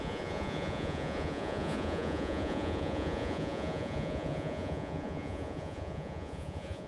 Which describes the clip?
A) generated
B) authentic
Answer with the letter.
A